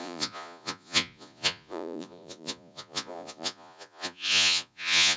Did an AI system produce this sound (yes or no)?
yes